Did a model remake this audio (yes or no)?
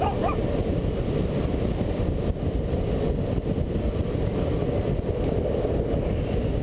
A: no